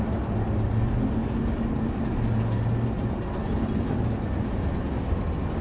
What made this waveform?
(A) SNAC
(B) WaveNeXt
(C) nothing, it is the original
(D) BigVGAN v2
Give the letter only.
C